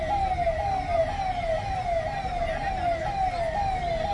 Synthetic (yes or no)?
no